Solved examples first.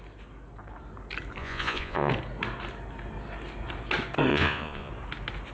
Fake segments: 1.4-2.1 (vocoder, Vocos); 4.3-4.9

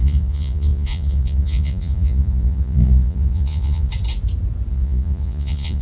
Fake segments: 0.0-3.9 (vocoder, Vocos); 4.7-5.8

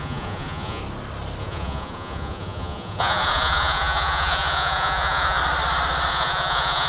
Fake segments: 0.0-0.8 (vocoder, Vocos); 1.4-5.4; 6.1-6.9

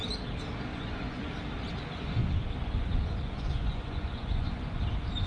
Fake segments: 0.7-1.3 (vocoder, Vocos); 2.2-4.8

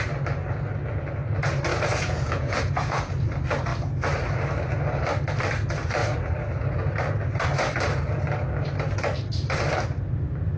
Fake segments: 1.7-3.1 (vocoder, Vocos)

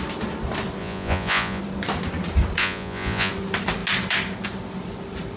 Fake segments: 0.8-1.6 (vocoder, Vocos); 2.6-3.3